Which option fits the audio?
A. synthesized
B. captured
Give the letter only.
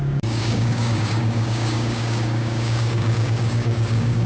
A